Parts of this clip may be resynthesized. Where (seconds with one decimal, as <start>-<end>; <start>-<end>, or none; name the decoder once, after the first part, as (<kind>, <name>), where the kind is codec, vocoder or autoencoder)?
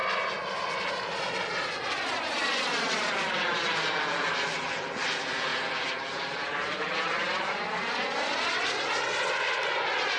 none